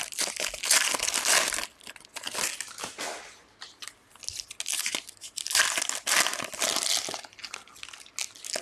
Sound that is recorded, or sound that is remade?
recorded